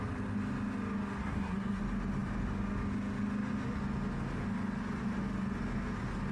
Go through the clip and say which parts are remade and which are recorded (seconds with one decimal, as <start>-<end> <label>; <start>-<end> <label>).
0.0-1.2 recorded; 1.2-1.8 remade; 1.8-6.3 recorded

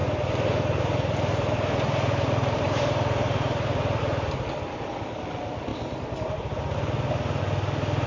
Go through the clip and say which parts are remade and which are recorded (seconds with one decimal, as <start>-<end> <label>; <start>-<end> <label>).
0.0-4.0 remade; 4.0-8.1 recorded

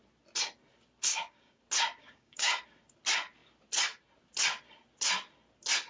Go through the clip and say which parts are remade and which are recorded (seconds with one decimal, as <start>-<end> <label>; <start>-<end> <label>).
0.0-1.1 recorded; 1.1-1.6 remade; 1.6-2.0 recorded; 2.0-2.6 remade; 2.6-5.9 recorded

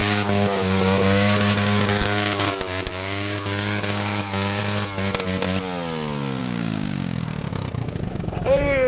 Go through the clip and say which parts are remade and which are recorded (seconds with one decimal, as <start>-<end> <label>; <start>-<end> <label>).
0.0-4.6 remade; 4.6-6.4 recorded; 6.4-8.9 remade

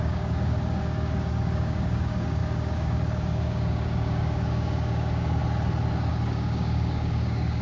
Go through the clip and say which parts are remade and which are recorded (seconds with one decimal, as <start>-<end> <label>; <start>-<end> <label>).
0.0-5.4 remade; 5.4-6.1 recorded; 6.1-7.6 remade

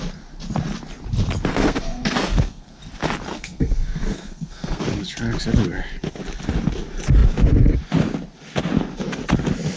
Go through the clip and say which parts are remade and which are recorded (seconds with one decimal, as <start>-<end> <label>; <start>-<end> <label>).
0.0-1.5 recorded; 1.5-2.8 remade; 2.8-3.3 recorded; 3.3-4.8 remade; 4.8-9.8 recorded